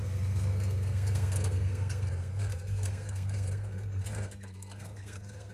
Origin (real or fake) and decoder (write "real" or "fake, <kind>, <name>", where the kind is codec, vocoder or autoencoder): fake, codec, SNAC